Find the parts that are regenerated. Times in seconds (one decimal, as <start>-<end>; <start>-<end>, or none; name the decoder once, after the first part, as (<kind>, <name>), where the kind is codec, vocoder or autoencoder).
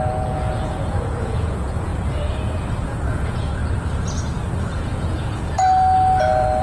0.0-1.9 (vocoder, Vocos); 3.1-3.6; 4.7-6.6